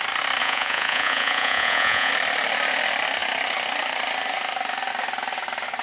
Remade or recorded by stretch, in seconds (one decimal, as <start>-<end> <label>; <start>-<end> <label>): 0.0-0.4 recorded; 0.4-2.1 remade; 2.1-5.8 recorded